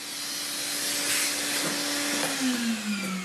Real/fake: real